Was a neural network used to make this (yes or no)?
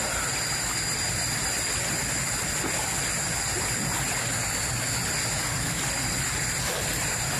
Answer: no